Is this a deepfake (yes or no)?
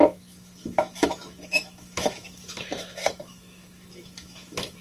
yes